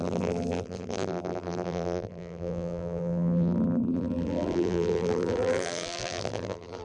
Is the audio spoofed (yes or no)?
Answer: yes